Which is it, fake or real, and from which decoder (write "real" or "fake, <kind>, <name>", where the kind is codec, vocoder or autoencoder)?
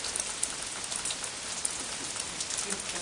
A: real